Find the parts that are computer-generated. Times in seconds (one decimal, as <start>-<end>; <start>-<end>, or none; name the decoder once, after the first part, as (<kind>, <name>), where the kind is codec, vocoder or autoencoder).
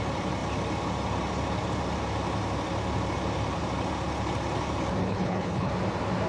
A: 5.0-5.7 (codec, HILCodec)